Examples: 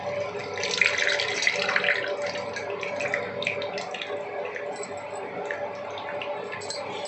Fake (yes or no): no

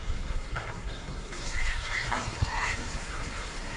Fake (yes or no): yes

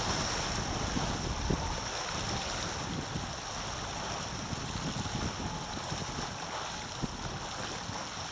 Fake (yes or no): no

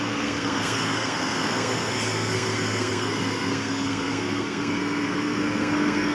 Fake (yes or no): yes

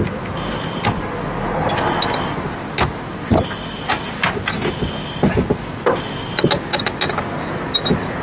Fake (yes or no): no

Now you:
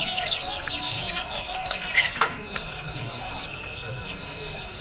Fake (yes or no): yes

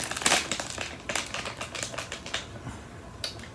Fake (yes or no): no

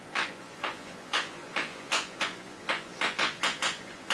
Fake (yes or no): yes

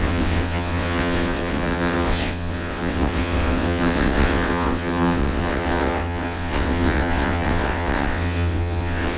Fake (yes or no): yes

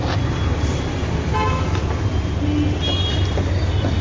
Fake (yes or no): no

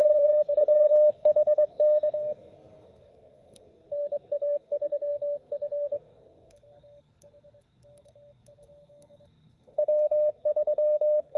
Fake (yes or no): yes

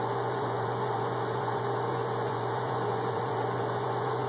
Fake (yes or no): yes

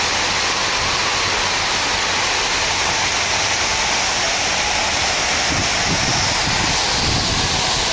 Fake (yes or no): no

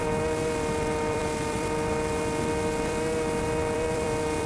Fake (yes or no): yes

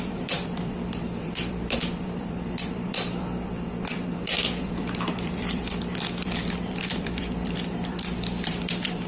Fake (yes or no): yes